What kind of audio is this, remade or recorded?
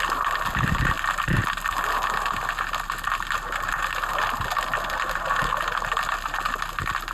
recorded